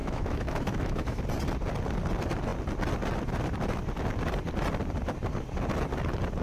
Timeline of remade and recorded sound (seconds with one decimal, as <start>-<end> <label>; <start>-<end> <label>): 0.0-1.2 remade; 1.2-6.4 recorded